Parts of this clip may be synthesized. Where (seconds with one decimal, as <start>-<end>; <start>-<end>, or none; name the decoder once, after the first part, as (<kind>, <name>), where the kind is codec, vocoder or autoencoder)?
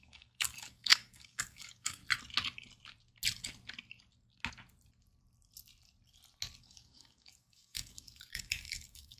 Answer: 0.0-2.0 (codec, DAC); 6.6-9.2